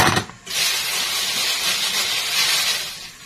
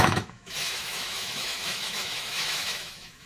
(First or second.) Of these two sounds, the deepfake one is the second